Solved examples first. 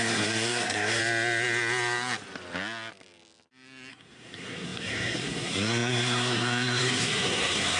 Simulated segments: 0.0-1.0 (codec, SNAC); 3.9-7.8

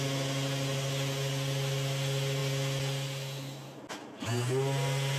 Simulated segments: none